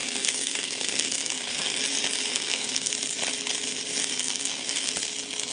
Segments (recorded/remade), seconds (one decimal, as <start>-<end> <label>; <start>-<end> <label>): 0.0-1.8 remade; 1.8-2.3 recorded; 2.3-2.9 remade; 2.9-4.0 recorded; 4.0-4.9 remade; 4.9-5.5 recorded